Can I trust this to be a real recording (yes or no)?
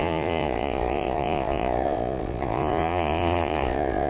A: no